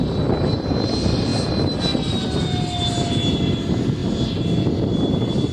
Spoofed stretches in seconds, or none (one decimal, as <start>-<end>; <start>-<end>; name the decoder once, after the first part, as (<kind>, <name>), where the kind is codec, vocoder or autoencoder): none